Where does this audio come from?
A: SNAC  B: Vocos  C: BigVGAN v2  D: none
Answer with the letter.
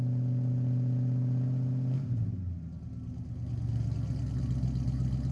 D